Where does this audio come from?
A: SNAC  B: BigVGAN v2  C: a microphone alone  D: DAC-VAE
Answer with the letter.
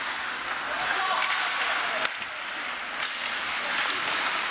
C